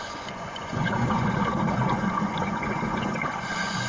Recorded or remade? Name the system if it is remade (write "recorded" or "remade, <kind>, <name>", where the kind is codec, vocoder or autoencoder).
remade, vocoder, Vocos